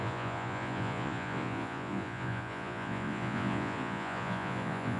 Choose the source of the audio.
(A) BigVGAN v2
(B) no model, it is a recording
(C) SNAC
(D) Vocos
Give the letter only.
D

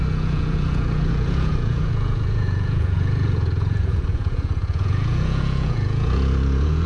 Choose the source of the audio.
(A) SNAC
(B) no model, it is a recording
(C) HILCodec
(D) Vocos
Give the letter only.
D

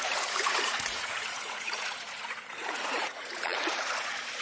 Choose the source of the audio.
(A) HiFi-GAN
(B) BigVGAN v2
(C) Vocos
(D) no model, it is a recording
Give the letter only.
C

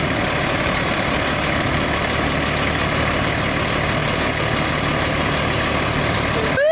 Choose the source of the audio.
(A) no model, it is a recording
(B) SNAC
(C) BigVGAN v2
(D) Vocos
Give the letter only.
A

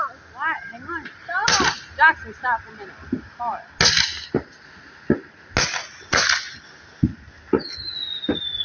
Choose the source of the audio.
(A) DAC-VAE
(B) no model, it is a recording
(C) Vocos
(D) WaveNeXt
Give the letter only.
B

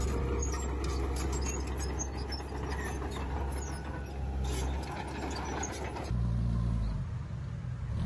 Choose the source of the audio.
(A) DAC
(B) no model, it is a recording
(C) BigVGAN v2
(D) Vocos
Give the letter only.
B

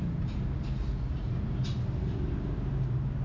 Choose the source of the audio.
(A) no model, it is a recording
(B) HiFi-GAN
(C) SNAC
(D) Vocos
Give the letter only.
A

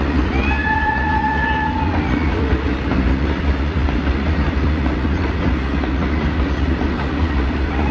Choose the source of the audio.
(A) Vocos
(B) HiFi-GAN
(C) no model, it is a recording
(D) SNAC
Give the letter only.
A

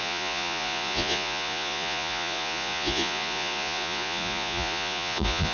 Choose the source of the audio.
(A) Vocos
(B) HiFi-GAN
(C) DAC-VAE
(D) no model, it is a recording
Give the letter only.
A